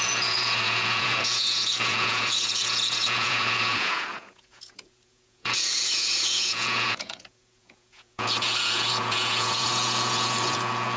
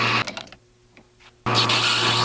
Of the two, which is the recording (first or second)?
second